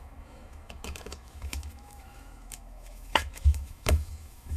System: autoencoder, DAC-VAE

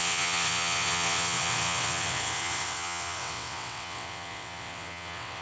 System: vocoder, WaveNeXt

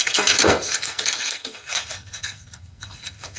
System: codec, SNAC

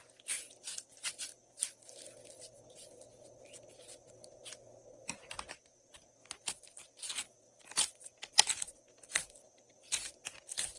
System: none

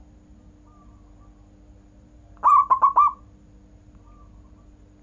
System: none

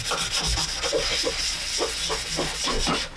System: none